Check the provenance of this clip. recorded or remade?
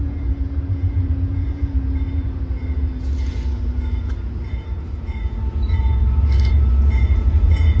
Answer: remade